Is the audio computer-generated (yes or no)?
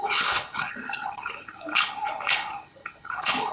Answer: yes